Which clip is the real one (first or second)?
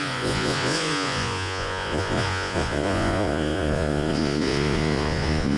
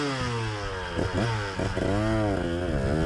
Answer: second